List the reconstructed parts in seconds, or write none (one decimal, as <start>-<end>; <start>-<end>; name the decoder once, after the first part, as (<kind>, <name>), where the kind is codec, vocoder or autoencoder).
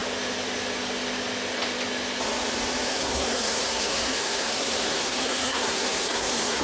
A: 2.9-6.6 (codec, SNAC)